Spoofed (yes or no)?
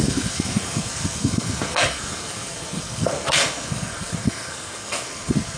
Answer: yes